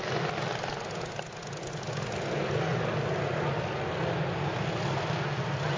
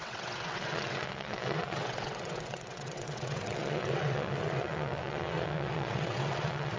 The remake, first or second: second